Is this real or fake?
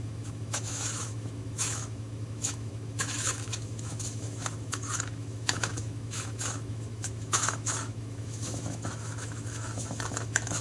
fake